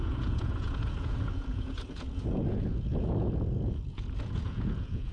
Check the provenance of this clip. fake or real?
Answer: fake